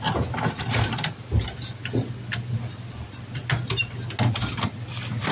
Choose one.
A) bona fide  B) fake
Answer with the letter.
A